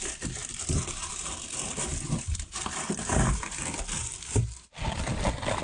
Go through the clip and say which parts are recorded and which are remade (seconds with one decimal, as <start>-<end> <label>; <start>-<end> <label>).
0.0-0.4 recorded; 0.4-1.1 remade; 1.1-1.9 recorded; 1.9-4.4 remade; 4.4-5.6 recorded